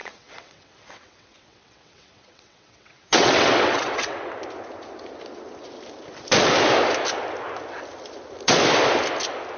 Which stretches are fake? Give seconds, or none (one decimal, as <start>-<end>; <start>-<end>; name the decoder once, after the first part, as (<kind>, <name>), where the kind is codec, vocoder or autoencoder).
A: 0.0-4.3 (vocoder, WaveNeXt)